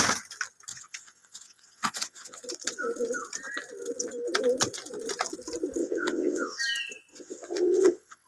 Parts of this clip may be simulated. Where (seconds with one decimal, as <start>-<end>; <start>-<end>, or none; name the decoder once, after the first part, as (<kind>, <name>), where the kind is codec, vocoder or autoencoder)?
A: 0.7-2.4 (vocoder, WaveNeXt); 5.8-6.6; 7.1-8.3